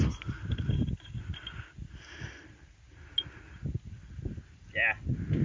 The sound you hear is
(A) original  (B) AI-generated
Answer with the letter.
A